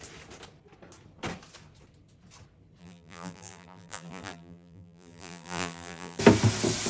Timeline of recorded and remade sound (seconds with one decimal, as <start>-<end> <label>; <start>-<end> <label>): 0.0-2.8 recorded; 2.8-6.2 remade; 6.2-6.9 recorded